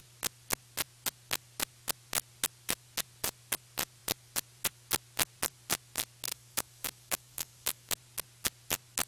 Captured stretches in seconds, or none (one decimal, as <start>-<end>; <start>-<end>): 0.0-6.3; 7.9-9.1